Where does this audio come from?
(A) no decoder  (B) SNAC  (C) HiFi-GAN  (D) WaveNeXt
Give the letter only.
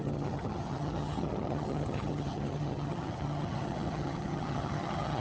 C